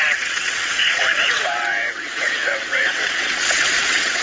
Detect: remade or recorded remade